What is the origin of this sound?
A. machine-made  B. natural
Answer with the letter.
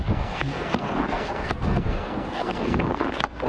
A